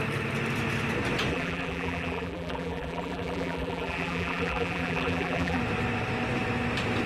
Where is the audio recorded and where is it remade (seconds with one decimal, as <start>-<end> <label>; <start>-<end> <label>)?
0.0-1.3 recorded; 1.3-5.6 remade; 5.6-7.1 recorded